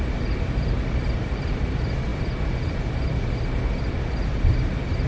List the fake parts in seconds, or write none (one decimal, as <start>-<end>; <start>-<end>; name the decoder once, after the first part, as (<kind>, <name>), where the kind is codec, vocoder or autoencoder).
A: none